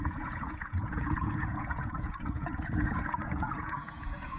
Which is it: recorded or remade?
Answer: remade